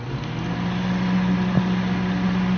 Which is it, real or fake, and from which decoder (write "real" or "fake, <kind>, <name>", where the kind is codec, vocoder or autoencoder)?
real